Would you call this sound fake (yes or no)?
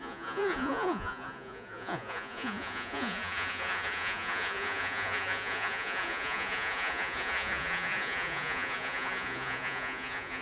yes